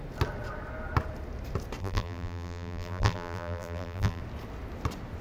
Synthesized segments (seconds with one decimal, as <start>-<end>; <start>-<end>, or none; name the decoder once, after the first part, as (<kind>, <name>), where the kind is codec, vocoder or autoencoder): 1.8-4.2 (vocoder, BigVGAN v2)